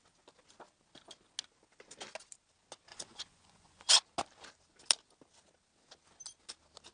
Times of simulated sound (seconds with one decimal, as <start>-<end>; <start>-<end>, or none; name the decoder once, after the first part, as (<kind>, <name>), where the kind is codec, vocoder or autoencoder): 2.9-3.9 (vocoder, Vocos)